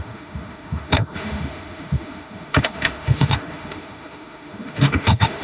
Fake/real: fake